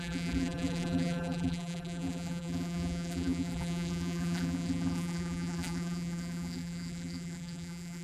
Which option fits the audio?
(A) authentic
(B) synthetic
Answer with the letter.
B